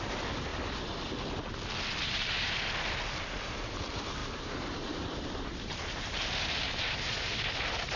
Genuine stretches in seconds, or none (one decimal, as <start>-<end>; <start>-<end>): 0.0-4.2; 6.0-8.0